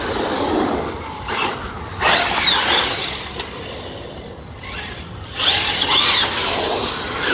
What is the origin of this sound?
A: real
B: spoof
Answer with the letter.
A